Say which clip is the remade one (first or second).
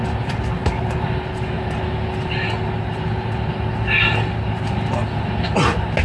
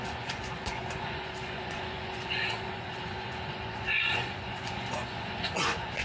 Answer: second